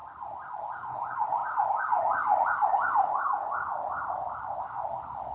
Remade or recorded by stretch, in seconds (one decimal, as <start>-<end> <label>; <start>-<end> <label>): 0.0-5.3 recorded